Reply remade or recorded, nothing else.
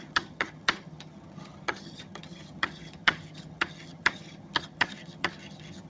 remade